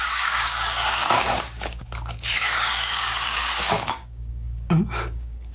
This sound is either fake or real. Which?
fake